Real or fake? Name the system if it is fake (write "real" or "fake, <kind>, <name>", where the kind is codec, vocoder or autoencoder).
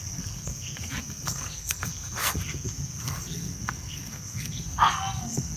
fake, codec, SNAC